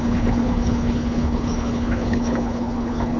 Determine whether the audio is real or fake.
fake